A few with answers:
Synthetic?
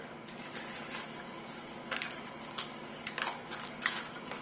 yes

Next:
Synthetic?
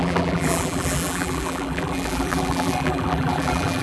yes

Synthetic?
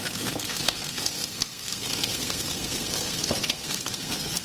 yes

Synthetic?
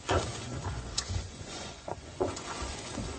yes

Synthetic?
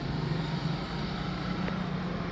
no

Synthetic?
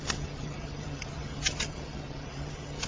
yes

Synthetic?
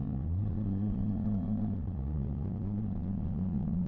yes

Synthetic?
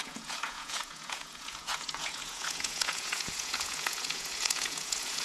yes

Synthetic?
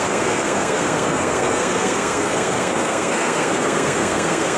yes